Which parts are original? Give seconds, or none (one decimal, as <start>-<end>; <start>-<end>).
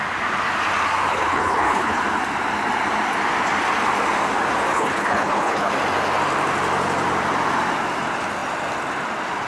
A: 0.0-1.1; 2.0-4.7; 5.7-9.5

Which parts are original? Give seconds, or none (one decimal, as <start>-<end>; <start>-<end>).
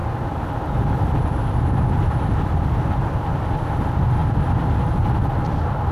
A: 0.0-5.9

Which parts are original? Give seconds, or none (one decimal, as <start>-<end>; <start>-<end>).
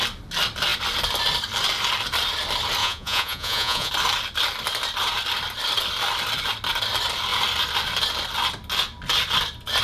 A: 0.0-2.8; 3.9-9.8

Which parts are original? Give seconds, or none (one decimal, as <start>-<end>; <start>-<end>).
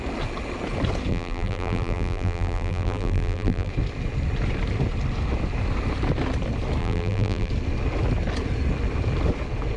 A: 0.0-1.1; 3.7-6.8; 7.5-9.8